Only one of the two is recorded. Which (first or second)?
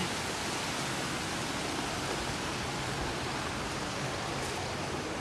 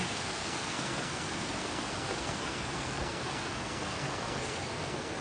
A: first